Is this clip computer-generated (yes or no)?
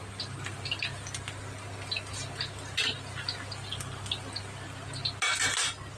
no